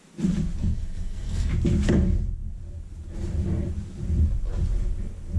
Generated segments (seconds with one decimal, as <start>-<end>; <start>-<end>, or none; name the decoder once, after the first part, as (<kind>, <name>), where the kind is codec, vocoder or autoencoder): 0.6-1.5 (codec, SNAC)